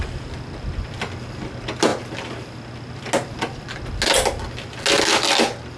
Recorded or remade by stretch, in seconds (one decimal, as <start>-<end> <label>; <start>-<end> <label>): 0.0-5.8 recorded

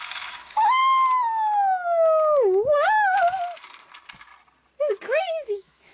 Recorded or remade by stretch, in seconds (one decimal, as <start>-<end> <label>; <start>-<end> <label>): 0.0-0.8 remade; 0.8-3.9 recorded; 3.9-4.3 remade; 4.3-4.9 recorded; 4.9-5.9 remade

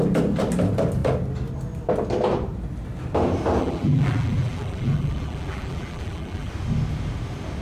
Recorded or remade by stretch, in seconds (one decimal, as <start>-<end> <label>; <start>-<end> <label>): 0.0-3.6 recorded; 3.6-6.5 remade; 6.5-7.6 recorded

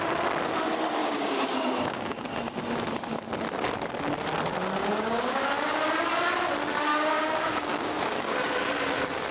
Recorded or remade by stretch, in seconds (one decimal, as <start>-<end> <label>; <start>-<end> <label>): 0.0-1.0 recorded; 1.0-2.3 remade; 2.3-4.8 recorded; 4.8-5.4 remade; 5.4-6.9 recorded; 6.9-8.5 remade; 8.5-9.3 recorded

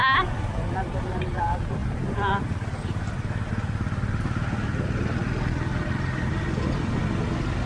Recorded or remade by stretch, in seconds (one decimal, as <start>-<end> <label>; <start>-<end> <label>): 0.0-7.7 recorded

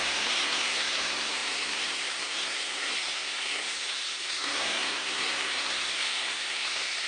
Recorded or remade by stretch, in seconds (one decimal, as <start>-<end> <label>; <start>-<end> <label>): 0.0-7.1 remade

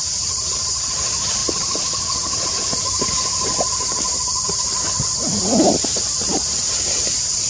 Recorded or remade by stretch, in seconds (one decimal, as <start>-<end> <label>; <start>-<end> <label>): 0.0-1.4 recorded; 1.4-4.8 remade; 4.8-7.5 recorded